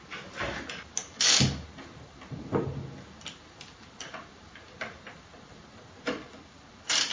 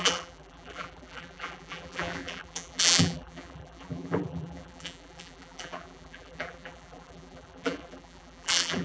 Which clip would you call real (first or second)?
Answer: first